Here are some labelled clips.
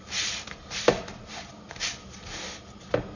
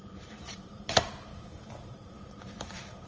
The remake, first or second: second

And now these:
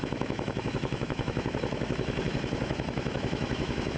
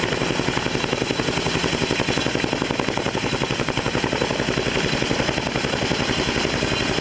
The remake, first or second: first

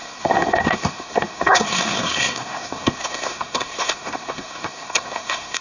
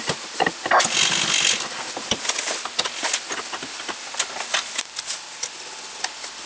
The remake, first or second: first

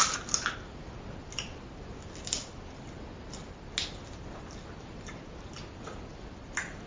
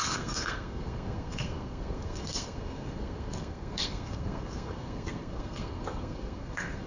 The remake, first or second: second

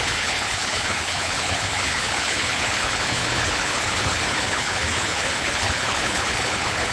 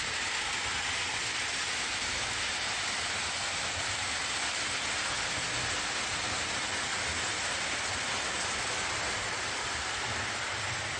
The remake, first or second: first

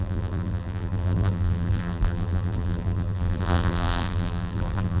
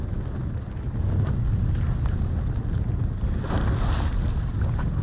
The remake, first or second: first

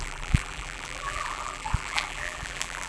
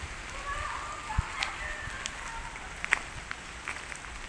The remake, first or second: first